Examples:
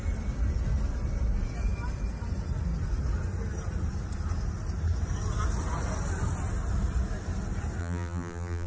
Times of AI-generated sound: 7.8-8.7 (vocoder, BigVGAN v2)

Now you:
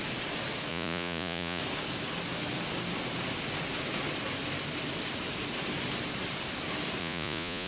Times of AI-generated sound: 0.7-1.6 (vocoder, Vocos); 7.0-7.7